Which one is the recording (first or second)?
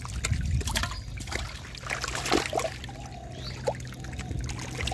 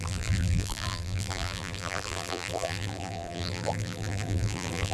first